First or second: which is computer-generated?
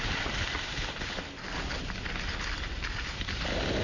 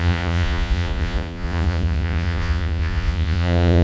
second